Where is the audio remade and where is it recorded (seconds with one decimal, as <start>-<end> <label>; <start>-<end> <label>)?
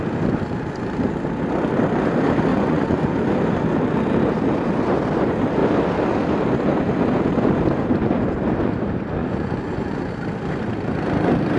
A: 0.0-2.5 recorded; 2.5-3.3 remade; 3.3-9.2 recorded; 9.2-10.1 remade; 10.1-11.6 recorded